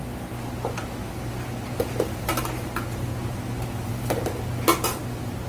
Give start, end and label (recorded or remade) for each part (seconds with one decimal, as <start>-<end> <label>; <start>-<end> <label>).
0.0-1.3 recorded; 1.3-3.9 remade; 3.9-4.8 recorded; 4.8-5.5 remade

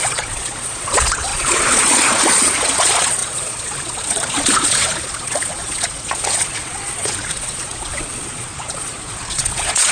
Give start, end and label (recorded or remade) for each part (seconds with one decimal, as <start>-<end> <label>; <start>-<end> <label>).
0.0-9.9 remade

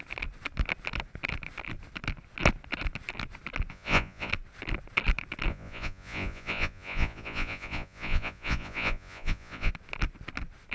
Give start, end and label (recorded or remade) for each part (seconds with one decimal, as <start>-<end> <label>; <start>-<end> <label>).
0.0-3.7 recorded; 3.7-4.3 remade; 4.3-5.5 recorded; 5.5-9.7 remade; 9.7-10.7 recorded